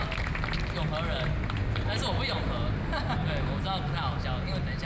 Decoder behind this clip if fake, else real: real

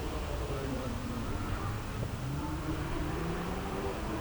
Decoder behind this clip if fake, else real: fake, vocoder, BigVGAN v2